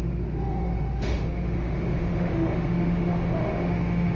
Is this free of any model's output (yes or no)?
no